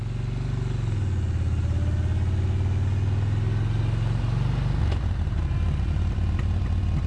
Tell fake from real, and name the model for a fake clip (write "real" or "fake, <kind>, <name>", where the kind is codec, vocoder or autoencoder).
real